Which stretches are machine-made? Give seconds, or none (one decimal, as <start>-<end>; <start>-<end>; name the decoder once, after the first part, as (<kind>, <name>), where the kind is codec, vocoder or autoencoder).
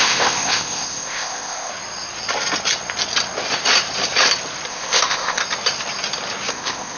0.0-1.7 (codec, ZipCodec); 4.7-5.4; 6.5-7.0